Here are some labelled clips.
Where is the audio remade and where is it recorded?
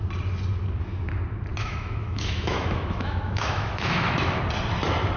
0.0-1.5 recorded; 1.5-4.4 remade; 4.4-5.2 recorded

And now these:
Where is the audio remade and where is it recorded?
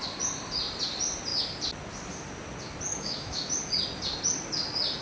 0.0-2.9 recorded; 2.9-3.5 remade; 3.5-5.0 recorded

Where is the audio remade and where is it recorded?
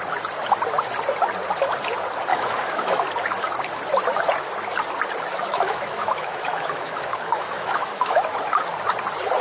0.0-2.3 recorded; 2.3-3.0 remade; 3.0-5.3 recorded; 5.3-8.2 remade; 8.2-9.4 recorded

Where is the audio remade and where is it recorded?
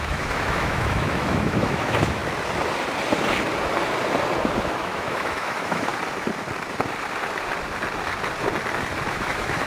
0.0-2.2 remade; 2.2-4.6 recorded; 4.6-5.9 remade; 5.9-9.1 recorded; 9.1-9.7 remade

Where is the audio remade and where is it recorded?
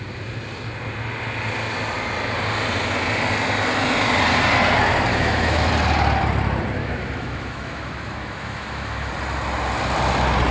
0.0-5.1 recorded; 5.1-5.7 remade; 5.7-6.8 recorded; 6.8-9.1 remade; 9.1-10.5 recorded